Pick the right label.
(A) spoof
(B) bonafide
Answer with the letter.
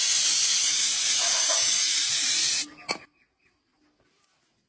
B